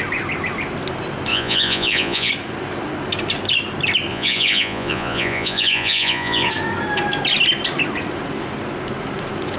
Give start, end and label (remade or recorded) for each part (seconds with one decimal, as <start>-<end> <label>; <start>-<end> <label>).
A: 0.0-1.3 recorded; 1.3-2.3 remade; 2.3-4.1 recorded; 4.1-6.5 remade; 6.5-9.6 recorded